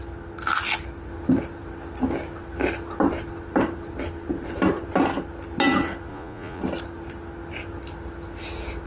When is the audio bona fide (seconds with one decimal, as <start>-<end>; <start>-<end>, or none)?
0.0-6.1; 6.6-8.9